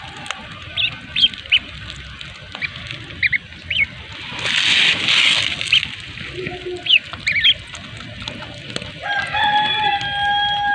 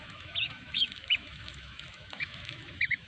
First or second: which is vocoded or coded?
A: second